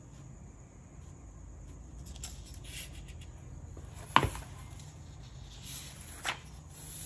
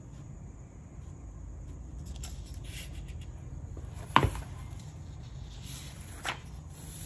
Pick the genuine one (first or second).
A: first